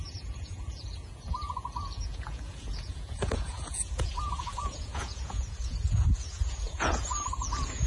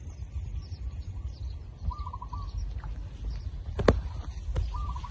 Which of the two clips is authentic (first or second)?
second